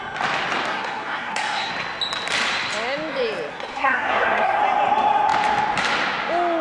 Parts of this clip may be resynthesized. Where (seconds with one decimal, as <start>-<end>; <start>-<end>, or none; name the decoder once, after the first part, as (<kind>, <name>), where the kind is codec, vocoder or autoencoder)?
0.7-1.7 (codec, SNAC); 3.5-4.6